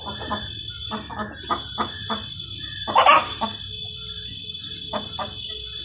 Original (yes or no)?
yes